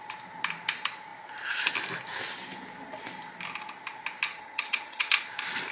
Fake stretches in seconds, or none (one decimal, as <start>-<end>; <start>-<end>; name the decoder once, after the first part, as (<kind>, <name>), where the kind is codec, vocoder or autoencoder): 4.3-5.1 (vocoder, HiFi-GAN)